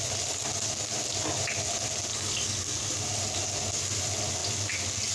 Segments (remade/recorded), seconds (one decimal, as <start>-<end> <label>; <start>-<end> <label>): 0.0-2.1 recorded; 2.1-2.9 remade; 2.9-5.1 recorded